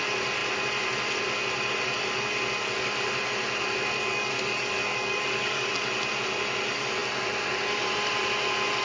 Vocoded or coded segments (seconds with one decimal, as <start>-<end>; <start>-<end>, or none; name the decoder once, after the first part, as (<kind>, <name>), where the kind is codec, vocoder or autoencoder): 4.0-5.7 (codec, DAC)